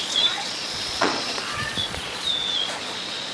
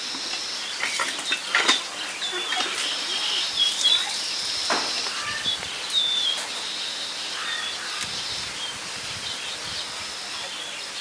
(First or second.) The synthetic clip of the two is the first